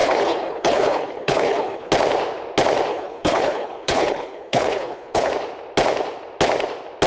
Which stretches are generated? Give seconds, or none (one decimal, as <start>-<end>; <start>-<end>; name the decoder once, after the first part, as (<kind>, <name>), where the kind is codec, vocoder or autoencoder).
0.0-1.9 (codec, HILCodec); 2.9-5.3